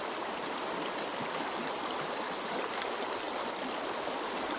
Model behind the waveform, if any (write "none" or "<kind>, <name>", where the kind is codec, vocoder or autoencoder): none